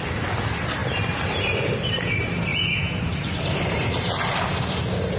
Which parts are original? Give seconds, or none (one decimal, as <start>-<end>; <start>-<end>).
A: 0.0-5.2